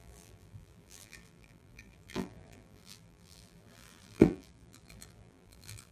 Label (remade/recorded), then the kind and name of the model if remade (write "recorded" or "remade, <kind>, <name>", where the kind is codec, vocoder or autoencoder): remade, vocoder, BigVGAN v2